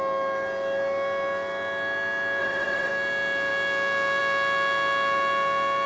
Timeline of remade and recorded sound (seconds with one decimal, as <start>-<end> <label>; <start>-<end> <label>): 0.0-2.4 recorded; 2.4-2.9 remade; 2.9-5.9 recorded